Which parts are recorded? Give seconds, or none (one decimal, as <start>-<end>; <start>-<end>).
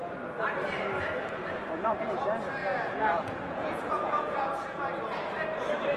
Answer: 0.0-2.6; 4.9-6.0